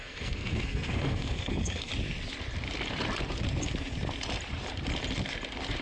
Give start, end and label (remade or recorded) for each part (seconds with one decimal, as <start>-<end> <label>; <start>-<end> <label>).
0.0-1.9 remade; 1.9-5.8 recorded